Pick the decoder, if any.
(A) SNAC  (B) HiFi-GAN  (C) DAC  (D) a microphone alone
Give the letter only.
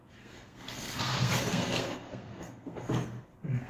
A